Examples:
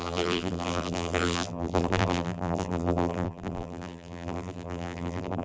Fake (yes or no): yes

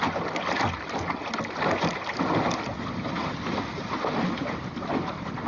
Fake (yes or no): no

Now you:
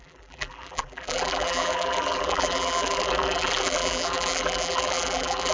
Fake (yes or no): yes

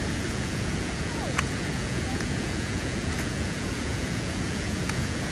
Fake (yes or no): yes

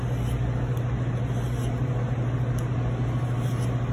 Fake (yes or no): no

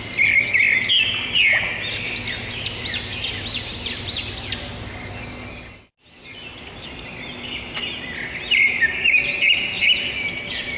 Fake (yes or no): no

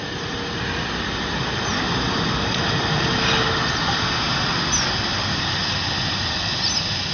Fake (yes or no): no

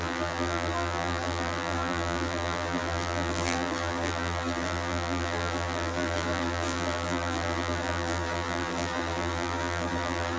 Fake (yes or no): yes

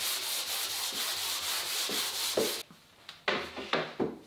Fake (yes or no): no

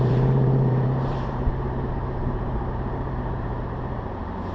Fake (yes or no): yes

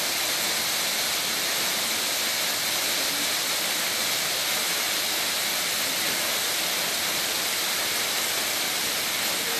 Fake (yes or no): no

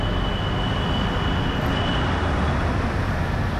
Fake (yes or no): no